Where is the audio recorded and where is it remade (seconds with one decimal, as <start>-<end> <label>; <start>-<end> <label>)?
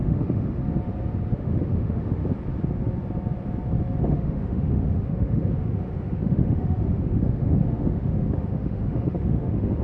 0.0-0.6 remade; 0.6-1.3 recorded; 1.3-2.2 remade; 2.2-4.0 recorded; 4.0-9.8 remade